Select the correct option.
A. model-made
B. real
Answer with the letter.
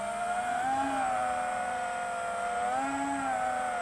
B